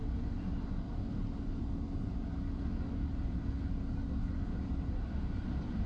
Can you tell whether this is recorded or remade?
recorded